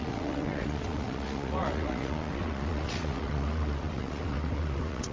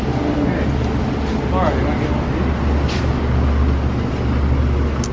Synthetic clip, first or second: first